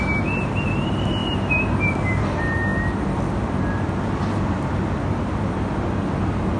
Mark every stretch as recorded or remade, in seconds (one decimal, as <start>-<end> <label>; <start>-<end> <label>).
0.0-6.6 recorded

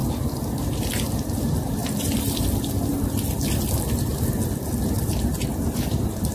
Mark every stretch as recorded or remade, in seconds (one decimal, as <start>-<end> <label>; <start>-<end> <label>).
0.0-6.3 recorded

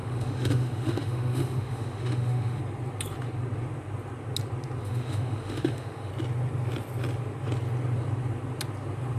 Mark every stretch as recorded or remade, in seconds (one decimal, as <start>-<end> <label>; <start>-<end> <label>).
0.0-2.6 remade; 2.6-4.8 recorded; 4.8-6.1 remade; 6.1-9.2 recorded

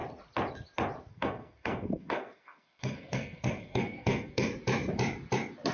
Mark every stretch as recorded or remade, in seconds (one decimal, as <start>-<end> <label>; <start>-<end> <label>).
0.0-1.1 recorded; 1.1-4.5 remade; 4.5-5.7 recorded

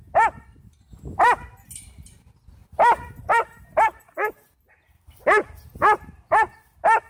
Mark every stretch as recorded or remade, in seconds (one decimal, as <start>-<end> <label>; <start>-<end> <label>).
0.0-2.6 recorded; 2.6-4.0 remade; 4.0-7.1 recorded